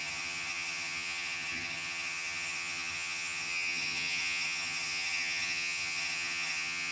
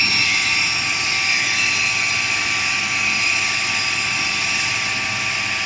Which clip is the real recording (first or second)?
second